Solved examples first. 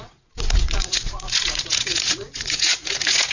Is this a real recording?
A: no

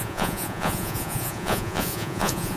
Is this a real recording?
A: no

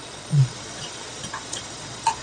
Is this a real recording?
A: no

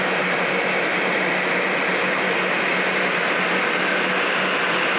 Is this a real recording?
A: yes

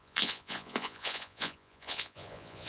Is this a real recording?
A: no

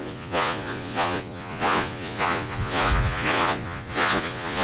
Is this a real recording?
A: no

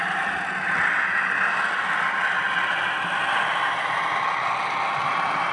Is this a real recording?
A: yes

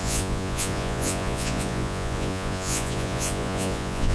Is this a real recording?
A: no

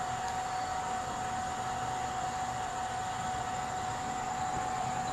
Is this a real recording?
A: yes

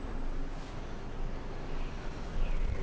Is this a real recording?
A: yes